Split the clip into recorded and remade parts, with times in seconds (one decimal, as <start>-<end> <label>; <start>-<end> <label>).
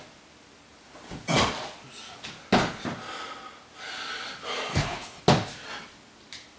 0.0-4.7 recorded; 4.7-5.2 remade; 5.2-6.6 recorded